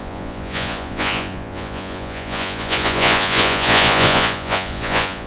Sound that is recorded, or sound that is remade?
remade